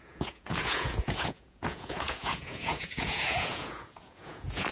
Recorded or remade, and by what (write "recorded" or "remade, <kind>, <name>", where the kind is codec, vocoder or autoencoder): remade, vocoder, Vocos